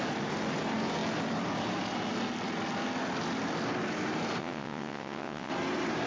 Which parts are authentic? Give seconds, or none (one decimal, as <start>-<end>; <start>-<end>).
0.0-4.4; 5.5-6.1